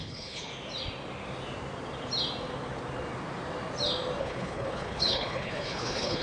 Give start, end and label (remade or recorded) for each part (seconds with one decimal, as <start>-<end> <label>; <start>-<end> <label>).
0.0-0.5 remade; 0.5-4.2 recorded; 4.2-6.2 remade